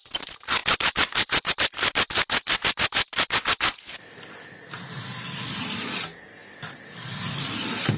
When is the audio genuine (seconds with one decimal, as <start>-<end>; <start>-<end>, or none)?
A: 0.0-0.6; 1.5-8.0